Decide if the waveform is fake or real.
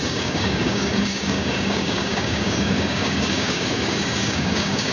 fake